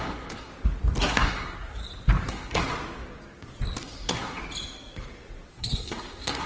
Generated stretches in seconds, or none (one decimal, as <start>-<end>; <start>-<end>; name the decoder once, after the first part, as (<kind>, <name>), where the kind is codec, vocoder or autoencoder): 0.0-0.5 (codec, SNAC); 1.0-1.8; 2.3-2.7; 3.8-4.4; 5.5-6.5